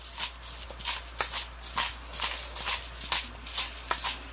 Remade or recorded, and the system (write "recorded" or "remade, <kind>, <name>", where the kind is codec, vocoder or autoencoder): recorded